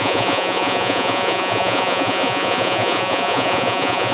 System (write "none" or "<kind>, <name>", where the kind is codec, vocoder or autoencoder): vocoder, Vocos